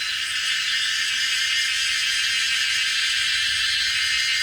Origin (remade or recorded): recorded